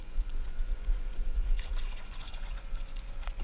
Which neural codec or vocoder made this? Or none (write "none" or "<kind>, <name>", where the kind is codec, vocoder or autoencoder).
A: vocoder, Vocos